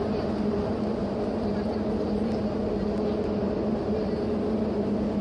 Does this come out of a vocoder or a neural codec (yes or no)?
no